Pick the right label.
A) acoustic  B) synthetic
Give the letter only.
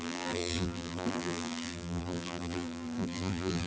B